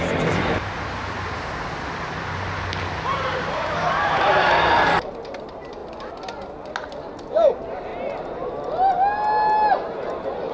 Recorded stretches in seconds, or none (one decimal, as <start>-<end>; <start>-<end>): 0.6-3.1; 5.1-7.9; 8.5-10.5